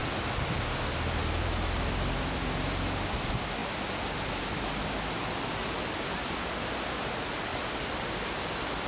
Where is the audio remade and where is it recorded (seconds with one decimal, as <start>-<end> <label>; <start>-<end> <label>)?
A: 0.0-7.5 recorded; 7.5-8.0 remade; 8.0-8.9 recorded